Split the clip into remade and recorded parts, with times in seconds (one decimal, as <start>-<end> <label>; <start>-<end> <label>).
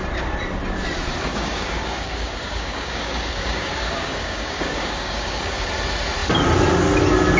0.0-1.3 recorded; 1.3-5.7 remade; 5.7-7.4 recorded